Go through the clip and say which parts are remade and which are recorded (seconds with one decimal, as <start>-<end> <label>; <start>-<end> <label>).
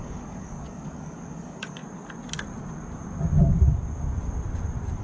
0.0-1.8 remade; 1.8-5.0 recorded